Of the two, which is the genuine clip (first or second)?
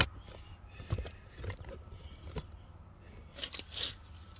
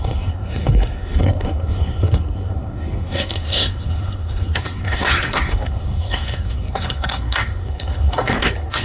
first